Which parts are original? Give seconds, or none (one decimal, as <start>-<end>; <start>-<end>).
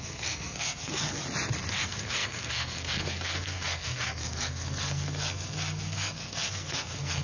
1.2-1.7